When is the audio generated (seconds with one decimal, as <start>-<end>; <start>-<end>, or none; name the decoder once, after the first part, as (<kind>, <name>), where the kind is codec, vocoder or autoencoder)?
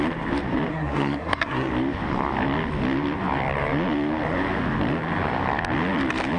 0.7-1.7 (codec, SNAC)